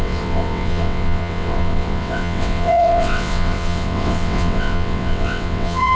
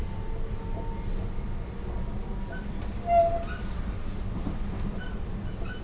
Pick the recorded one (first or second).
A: second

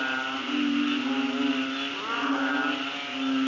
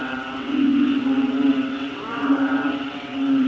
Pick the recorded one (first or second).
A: first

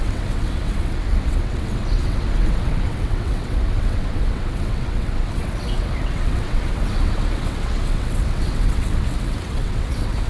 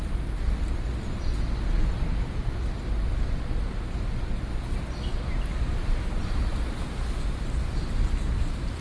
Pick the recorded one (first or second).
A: second